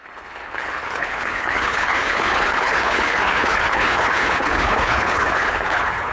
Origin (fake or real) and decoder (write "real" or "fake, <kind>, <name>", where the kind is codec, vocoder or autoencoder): fake, codec, HILCodec